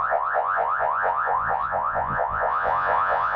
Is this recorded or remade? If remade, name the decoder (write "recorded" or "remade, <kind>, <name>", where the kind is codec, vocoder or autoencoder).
remade, vocoder, Vocos